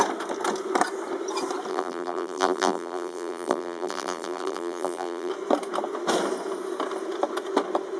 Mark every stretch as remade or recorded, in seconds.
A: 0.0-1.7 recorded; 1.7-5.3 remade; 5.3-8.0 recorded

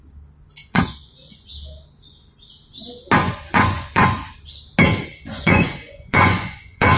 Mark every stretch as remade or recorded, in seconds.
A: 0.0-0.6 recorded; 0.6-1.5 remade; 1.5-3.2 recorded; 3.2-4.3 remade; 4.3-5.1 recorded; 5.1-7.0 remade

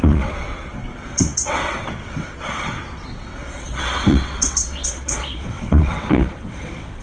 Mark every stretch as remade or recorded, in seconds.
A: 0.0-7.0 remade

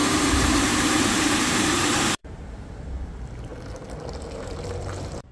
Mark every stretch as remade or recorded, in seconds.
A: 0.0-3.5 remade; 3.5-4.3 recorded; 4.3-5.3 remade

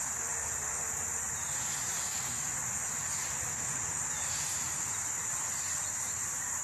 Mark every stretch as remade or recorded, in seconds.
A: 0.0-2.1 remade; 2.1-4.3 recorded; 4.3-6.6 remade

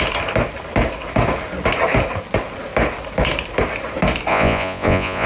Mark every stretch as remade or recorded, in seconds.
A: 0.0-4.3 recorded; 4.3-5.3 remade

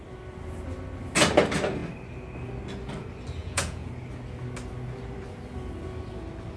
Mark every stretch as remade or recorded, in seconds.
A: 0.0-3.4 recorded; 3.4-3.9 remade; 3.9-6.6 recorded

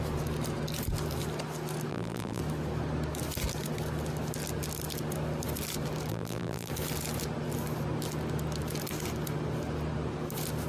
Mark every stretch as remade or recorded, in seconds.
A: 0.0-1.9 recorded; 1.9-2.4 remade; 2.4-6.1 recorded; 6.1-6.7 remade; 6.7-10.7 recorded